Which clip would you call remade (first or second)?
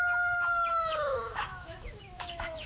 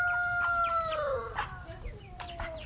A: first